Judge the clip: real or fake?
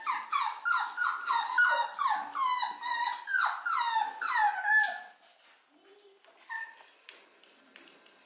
real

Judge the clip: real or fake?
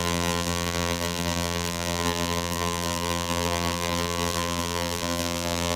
fake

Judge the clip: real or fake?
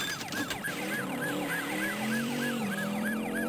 fake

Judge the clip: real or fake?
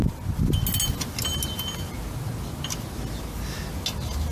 real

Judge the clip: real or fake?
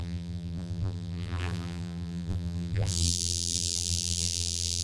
fake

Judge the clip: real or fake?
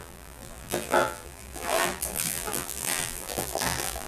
fake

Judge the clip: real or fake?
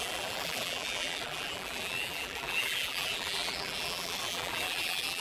fake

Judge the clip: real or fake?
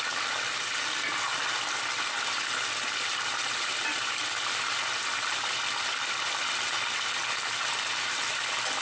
fake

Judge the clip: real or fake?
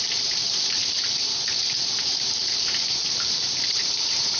fake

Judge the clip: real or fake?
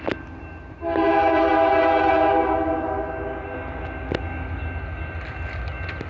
real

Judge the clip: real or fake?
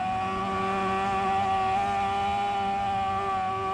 real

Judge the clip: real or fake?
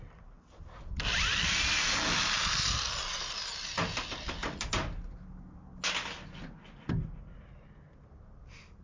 real